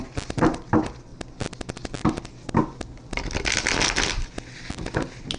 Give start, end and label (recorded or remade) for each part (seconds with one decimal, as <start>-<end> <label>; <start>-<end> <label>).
0.0-5.4 recorded